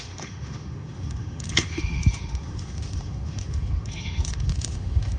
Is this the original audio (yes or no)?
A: no